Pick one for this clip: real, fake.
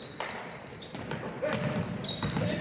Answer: real